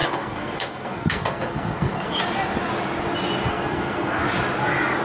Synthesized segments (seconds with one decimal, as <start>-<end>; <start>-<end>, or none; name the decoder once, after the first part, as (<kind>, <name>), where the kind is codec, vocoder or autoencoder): 0.0-2.2 (codec, SNAC); 3.5-4.2